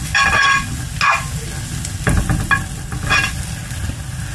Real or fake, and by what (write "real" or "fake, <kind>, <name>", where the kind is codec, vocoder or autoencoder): real